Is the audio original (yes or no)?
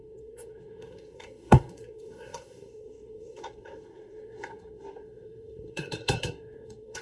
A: no